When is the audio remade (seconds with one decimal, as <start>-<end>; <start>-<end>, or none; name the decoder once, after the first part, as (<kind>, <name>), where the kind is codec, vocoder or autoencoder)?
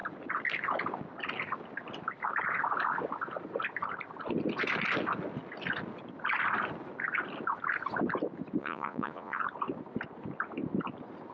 8.6-9.4 (vocoder, Vocos)